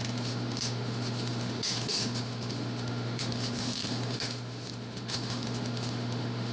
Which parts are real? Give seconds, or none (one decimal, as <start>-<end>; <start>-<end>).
none